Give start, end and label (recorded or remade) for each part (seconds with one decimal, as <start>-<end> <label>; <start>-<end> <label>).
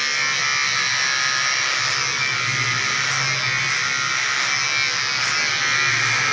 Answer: 0.0-6.3 recorded